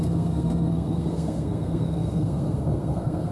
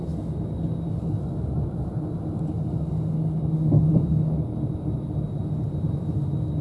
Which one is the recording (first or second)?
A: second